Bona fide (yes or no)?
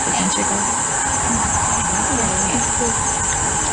yes